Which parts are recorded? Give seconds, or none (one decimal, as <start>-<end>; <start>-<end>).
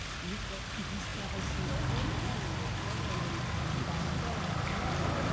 0.0-5.3